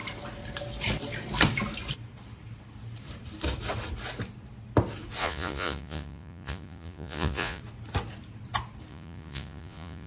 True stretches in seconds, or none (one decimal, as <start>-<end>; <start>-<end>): 0.0-5.2; 7.6-8.9